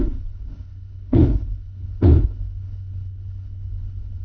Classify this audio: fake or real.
fake